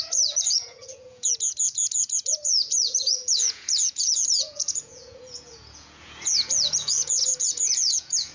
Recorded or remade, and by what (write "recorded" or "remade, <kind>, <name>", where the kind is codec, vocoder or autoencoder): remade, vocoder, Vocos